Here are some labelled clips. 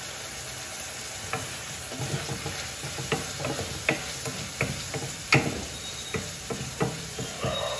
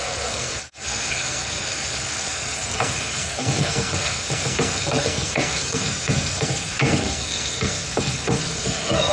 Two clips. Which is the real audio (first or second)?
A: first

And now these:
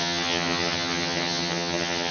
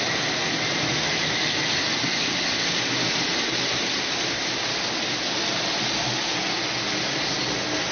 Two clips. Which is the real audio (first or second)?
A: second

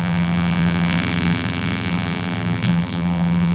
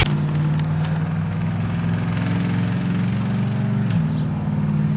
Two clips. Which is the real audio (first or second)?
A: second